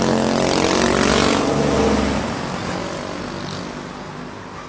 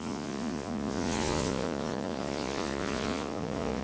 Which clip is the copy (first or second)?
second